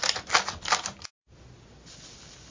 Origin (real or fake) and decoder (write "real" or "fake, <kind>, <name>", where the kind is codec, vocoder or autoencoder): real